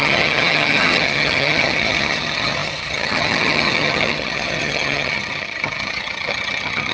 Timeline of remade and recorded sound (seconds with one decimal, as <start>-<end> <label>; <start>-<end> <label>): 0.0-6.9 remade